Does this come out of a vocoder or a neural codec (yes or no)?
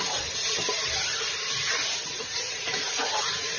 yes